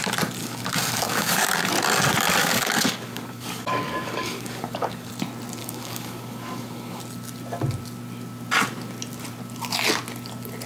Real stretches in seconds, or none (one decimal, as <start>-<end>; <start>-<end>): 0.0-0.4; 1.7-2.4; 5.1-5.6; 7.0-10.7